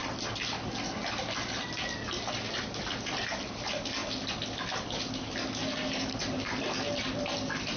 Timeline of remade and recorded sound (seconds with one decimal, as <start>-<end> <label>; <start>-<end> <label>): 0.0-5.6 recorded; 5.6-6.7 remade; 6.7-7.8 recorded